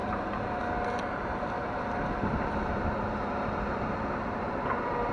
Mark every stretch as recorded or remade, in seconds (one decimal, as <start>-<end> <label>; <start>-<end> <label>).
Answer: 0.0-0.6 remade; 0.6-1.6 recorded; 1.6-5.1 remade